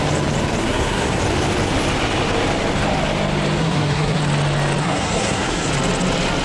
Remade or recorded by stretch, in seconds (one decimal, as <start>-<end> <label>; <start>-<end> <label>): 0.0-0.6 recorded; 0.6-1.2 remade; 1.2-3.6 recorded; 3.6-4.2 remade; 4.2-4.8 recorded; 4.8-5.7 remade; 5.7-6.4 recorded